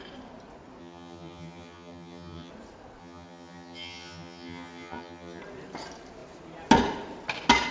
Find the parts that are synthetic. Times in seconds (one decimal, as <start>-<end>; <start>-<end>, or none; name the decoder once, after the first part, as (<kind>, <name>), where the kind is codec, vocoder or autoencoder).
0.8-2.5 (vocoder, HiFi-GAN); 3.0-5.4